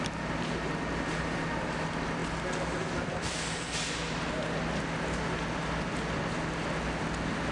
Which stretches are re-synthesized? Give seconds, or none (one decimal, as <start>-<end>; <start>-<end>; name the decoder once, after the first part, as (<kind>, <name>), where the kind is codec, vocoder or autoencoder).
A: none

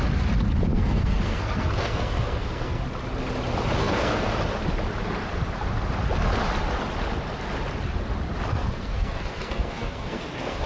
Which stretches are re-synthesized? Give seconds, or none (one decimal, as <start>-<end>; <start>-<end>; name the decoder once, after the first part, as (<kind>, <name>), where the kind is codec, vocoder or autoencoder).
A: 0.7-2.8 (codec, SNAC); 3.8-4.3; 8.5-10.7

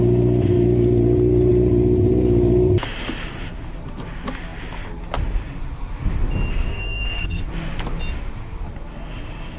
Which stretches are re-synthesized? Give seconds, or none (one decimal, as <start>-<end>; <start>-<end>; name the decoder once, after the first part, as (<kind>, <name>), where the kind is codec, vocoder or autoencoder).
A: 6.5-7.4 (codec, SNAC)